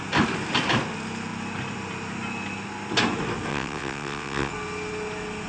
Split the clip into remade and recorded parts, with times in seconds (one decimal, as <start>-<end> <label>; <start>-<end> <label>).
0.0-3.5 recorded; 3.5-4.5 remade; 4.5-5.5 recorded